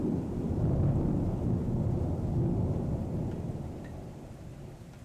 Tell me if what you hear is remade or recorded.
recorded